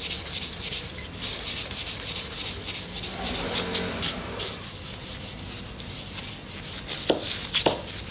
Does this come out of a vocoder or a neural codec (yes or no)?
no